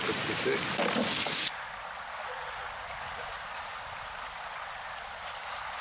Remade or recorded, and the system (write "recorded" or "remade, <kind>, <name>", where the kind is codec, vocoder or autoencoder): recorded